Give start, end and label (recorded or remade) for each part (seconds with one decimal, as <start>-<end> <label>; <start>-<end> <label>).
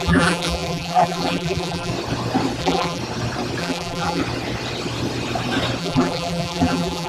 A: 0.0-1.9 remade; 1.9-2.6 recorded; 2.6-3.0 remade; 3.0-3.6 recorded; 3.6-4.2 remade; 4.2-5.8 recorded; 5.8-7.1 remade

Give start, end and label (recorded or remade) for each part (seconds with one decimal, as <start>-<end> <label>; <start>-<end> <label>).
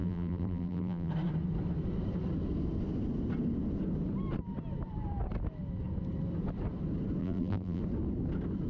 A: 0.0-1.1 remade; 1.1-7.2 recorded; 7.2-7.8 remade; 7.8-8.7 recorded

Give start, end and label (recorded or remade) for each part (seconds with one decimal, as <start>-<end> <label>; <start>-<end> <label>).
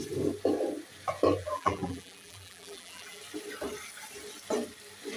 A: 0.0-1.4 recorded; 1.4-3.2 remade; 3.2-5.2 recorded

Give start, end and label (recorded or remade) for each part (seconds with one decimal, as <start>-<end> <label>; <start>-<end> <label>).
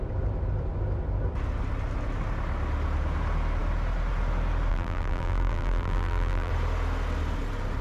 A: 0.0-4.7 recorded; 4.7-6.5 remade; 6.5-7.8 recorded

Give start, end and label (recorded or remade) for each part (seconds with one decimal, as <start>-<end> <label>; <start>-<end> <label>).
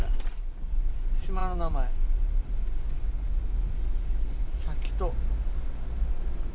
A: 0.0-1.4 recorded; 1.4-2.2 remade; 2.2-3.1 recorded; 3.1-4.8 remade; 4.8-6.5 recorded